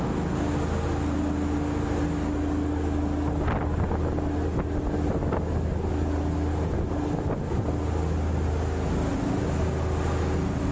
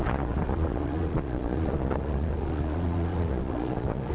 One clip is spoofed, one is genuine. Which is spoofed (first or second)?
second